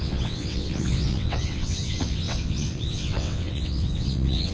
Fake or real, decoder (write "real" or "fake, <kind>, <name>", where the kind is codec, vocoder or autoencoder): fake, vocoder, WaveNeXt